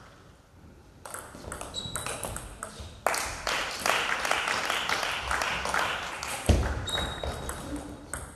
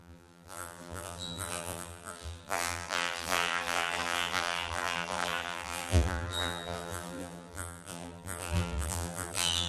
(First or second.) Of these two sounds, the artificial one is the second